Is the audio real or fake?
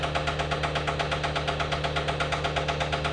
real